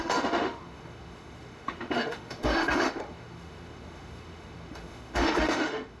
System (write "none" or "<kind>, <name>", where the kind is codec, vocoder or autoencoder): autoencoder, DAC-VAE